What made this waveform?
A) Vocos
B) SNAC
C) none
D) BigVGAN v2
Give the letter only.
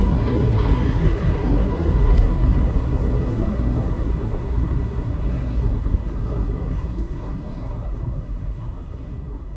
B